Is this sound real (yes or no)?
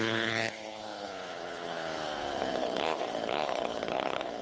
no